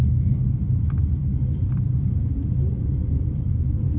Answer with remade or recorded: remade